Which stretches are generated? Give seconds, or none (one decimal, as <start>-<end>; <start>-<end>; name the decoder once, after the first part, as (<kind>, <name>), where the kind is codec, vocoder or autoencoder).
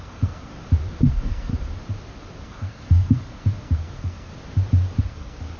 0.0-0.5 (codec, SNAC); 1.1-1.5; 2.4-4.3; 5.0-5.6